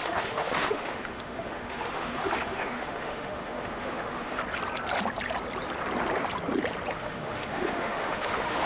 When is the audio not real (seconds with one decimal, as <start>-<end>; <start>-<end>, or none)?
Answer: 0.0-4.4; 6.9-8.7